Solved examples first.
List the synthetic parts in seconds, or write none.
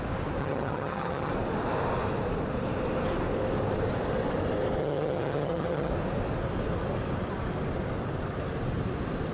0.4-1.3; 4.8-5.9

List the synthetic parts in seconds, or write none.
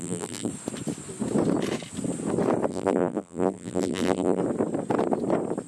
0.0-0.5; 2.7-4.4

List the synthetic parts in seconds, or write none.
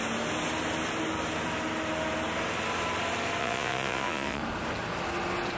3.4-4.4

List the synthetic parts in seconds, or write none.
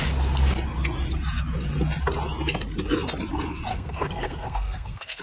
3.7-5.2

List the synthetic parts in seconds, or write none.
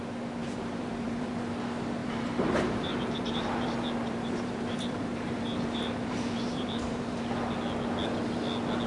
0.4-1.3; 2.0-7.2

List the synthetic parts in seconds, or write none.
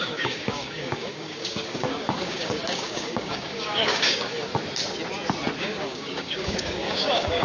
0.0-4.5; 5.6-7.4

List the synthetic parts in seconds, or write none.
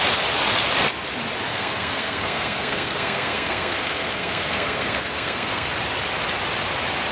1.5-5.7